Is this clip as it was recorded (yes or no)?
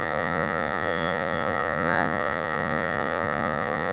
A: no